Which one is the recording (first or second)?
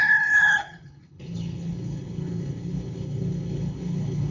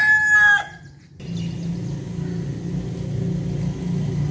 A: second